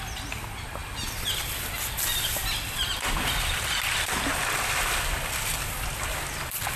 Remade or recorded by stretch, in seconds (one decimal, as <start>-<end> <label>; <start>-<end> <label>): 0.0-6.8 recorded